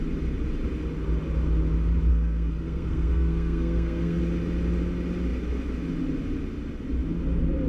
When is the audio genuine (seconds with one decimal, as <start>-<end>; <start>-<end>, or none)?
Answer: 0.0-2.1; 4.2-7.7